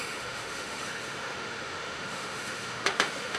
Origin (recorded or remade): remade